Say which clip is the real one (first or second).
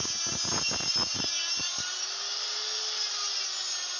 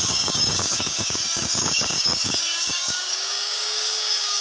first